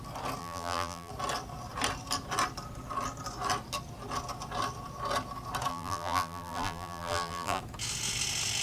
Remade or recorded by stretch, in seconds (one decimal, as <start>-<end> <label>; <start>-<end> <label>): 0.0-0.4 recorded; 0.4-1.1 remade; 1.1-5.7 recorded; 5.7-7.6 remade; 7.6-8.6 recorded